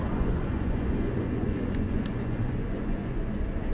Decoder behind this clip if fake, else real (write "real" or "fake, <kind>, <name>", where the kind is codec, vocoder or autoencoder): fake, vocoder, Vocos